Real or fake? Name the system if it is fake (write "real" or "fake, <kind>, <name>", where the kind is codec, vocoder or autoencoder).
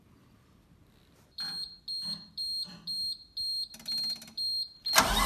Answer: real